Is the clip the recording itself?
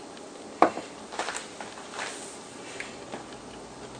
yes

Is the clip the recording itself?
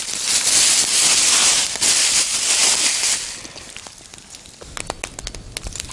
yes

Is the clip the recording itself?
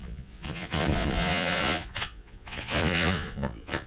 no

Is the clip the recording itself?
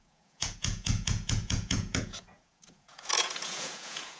no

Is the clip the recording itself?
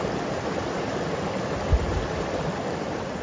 yes